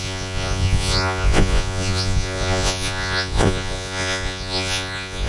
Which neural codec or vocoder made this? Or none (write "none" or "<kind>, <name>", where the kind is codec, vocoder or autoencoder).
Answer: vocoder, Vocos